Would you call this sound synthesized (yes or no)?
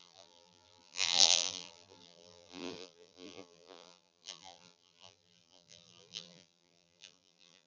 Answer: yes